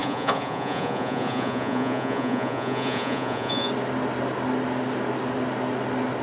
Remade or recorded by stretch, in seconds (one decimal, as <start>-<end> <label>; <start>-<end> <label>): 0.0-3.7 remade; 3.7-6.2 recorded